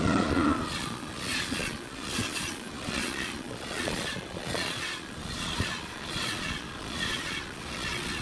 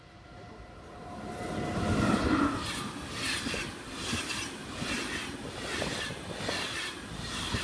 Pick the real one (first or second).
second